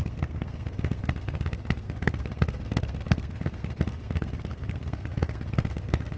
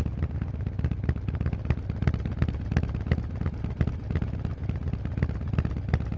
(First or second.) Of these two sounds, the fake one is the first